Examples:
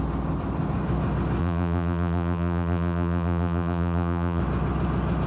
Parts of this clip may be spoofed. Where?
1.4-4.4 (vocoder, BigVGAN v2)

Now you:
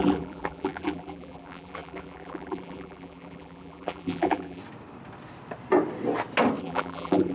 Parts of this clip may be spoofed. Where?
0.0-4.6 (vocoder, BigVGAN v2); 6.6-7.3